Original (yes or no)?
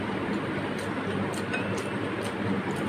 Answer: yes